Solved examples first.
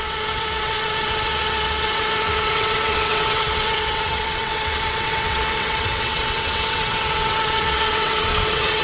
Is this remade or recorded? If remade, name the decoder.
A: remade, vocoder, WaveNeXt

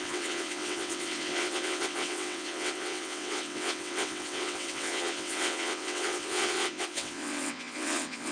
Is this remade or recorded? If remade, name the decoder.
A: remade, vocoder, WaveNeXt